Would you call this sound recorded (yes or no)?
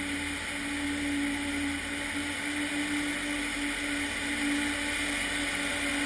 yes